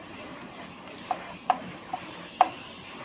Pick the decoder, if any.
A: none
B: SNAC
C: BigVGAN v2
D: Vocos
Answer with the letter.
C